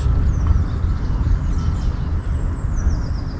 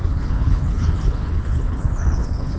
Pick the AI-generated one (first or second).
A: second